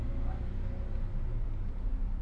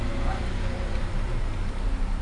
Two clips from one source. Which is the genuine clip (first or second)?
first